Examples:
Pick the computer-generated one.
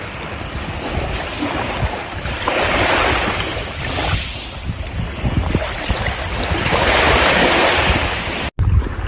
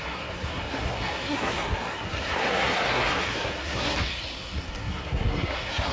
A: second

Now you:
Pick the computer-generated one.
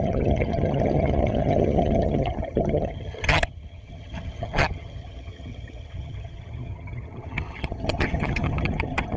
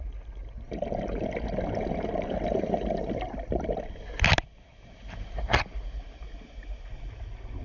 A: first